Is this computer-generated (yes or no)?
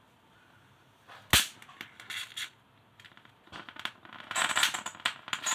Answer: no